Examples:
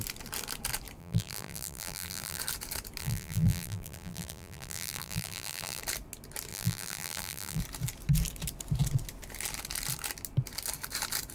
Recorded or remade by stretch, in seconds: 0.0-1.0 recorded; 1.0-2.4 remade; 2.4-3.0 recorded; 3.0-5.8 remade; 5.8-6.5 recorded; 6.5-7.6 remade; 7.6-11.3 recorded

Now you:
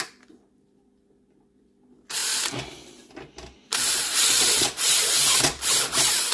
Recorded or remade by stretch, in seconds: 0.0-3.7 recorded; 3.7-6.3 remade

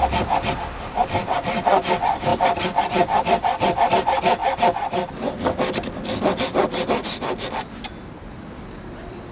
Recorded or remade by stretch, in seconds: 0.0-4.4 remade; 4.4-6.2 recorded; 6.2-9.3 remade

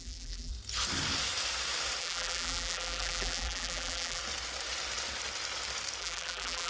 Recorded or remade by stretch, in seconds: 0.0-0.5 remade; 0.5-2.0 recorded; 2.0-4.2 remade; 4.2-6.0 recorded; 6.0-6.7 remade